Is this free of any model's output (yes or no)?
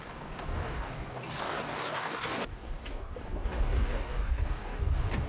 no